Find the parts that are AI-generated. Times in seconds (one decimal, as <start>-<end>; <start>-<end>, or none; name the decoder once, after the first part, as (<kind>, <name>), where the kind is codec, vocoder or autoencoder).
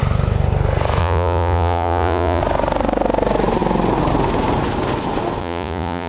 1.0-2.4 (vocoder, Vocos); 5.4-6.1